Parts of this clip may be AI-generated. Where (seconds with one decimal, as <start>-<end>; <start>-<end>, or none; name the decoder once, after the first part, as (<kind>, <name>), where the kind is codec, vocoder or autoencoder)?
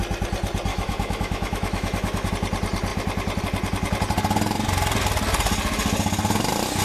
0.7-2.3 (autoencoder, DAC-VAE)